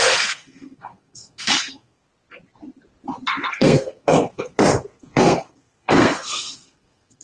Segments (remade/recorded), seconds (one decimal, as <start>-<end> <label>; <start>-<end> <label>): 0.0-2.1 remade; 2.1-3.5 recorded; 3.5-7.2 remade